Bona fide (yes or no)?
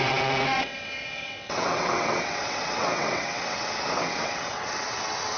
no